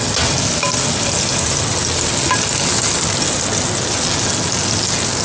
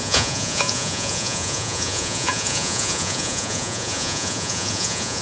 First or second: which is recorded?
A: first